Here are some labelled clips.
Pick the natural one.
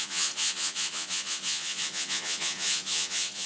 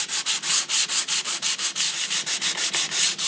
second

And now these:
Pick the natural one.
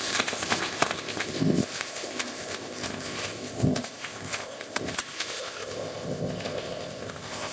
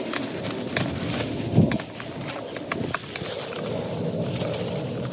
second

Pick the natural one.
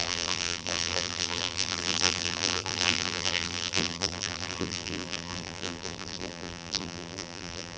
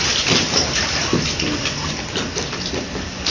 second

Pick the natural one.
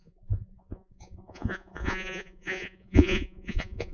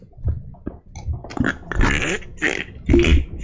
second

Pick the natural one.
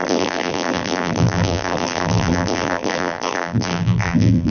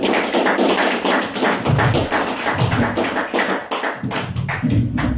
second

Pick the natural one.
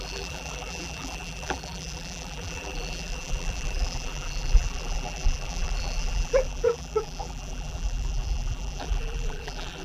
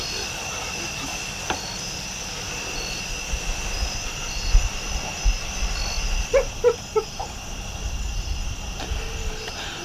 second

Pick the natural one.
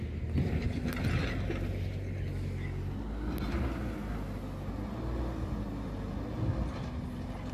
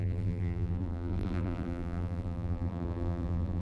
first